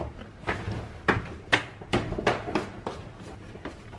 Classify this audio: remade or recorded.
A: recorded